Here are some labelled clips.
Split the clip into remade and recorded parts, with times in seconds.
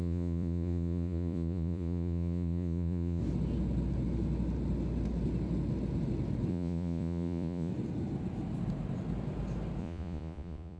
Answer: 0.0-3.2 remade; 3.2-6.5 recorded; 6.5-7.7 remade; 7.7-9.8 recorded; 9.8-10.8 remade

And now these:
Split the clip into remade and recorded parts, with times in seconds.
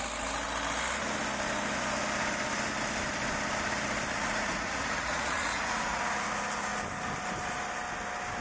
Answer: 0.0-4.1 recorded; 4.1-6.0 remade; 6.0-8.4 recorded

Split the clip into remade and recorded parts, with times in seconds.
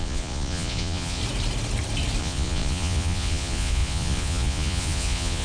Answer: 0.0-1.2 remade; 1.2-2.2 recorded; 2.2-5.4 remade